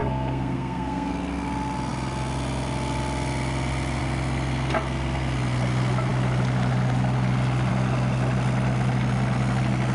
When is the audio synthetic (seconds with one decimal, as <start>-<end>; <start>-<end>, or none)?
0.0-1.1